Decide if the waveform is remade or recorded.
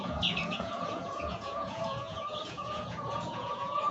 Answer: remade